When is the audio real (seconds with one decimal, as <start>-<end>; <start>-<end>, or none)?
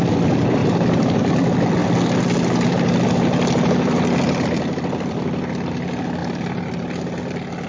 0.0-7.7